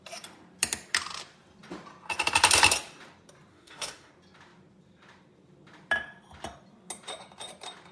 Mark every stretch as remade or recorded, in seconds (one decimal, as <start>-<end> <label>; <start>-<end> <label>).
0.0-3.5 recorded; 3.5-4.1 remade; 4.1-7.9 recorded